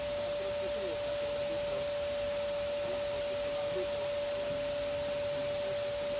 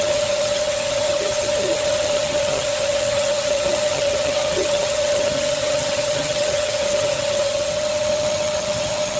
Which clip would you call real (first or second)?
first